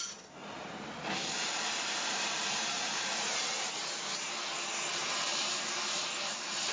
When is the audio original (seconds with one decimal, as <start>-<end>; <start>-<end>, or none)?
0.0-0.4; 4.3-5.3; 6.1-6.7